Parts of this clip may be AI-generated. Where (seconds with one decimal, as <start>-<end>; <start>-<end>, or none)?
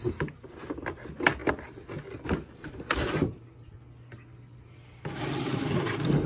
none